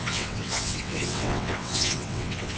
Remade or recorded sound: remade